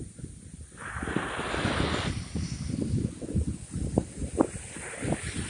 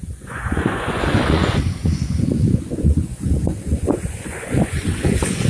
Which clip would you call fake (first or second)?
second